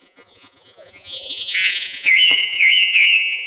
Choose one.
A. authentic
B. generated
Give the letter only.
B